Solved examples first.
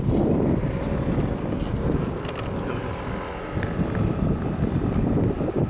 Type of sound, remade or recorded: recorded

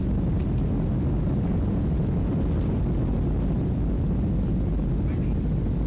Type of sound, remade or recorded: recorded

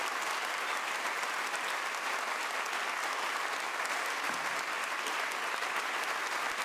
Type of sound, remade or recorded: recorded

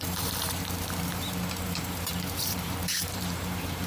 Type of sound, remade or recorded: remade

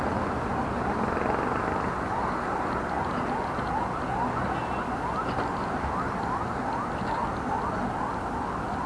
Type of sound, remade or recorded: recorded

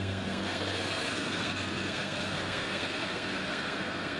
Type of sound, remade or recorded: remade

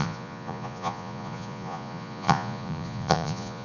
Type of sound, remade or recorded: remade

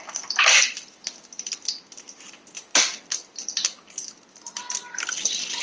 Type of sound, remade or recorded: recorded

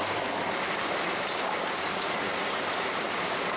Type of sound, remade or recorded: recorded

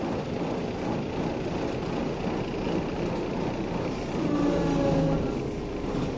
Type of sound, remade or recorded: recorded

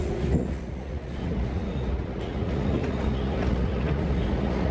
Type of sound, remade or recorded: remade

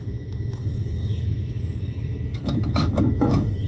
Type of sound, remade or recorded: remade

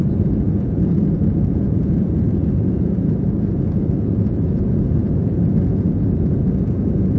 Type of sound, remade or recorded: remade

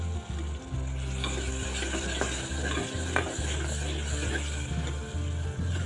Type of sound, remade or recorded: recorded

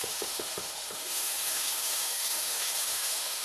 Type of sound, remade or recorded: remade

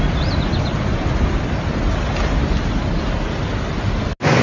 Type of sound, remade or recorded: recorded